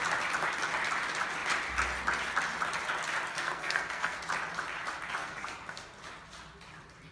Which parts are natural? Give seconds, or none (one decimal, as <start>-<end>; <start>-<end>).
0.0-3.3; 4.2-5.2; 6.0-7.1